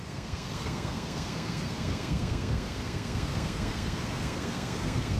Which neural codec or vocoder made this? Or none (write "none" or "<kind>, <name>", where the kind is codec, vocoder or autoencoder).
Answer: codec, SNAC